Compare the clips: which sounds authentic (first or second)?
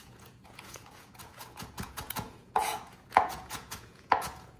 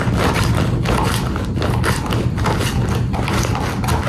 second